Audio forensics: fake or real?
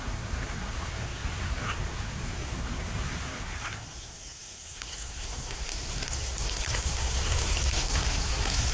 fake